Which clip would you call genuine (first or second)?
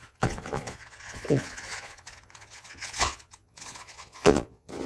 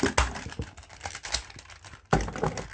second